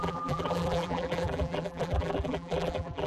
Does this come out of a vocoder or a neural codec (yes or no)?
yes